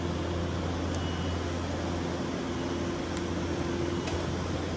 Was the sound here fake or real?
real